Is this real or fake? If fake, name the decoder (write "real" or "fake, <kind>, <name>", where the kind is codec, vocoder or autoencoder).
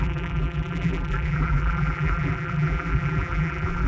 fake, vocoder, BigVGAN v2